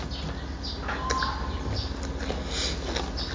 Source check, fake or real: real